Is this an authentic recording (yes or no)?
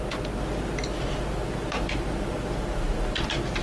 yes